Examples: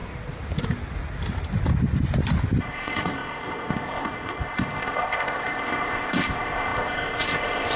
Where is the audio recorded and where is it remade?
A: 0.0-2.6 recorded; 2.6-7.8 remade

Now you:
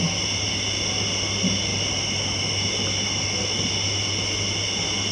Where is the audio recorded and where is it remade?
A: 0.0-5.1 recorded